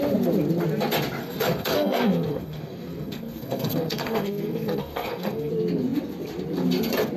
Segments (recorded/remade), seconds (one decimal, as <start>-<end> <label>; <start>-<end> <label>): 0.0-1.2 recorded; 1.2-5.5 remade; 5.5-7.2 recorded